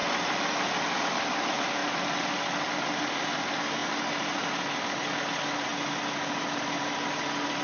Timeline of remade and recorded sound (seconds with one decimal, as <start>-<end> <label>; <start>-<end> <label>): 0.0-7.6 recorded